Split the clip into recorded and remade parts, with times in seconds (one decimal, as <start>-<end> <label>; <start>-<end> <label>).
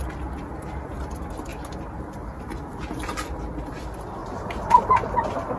0.0-4.2 recorded; 4.2-5.1 remade; 5.1-5.6 recorded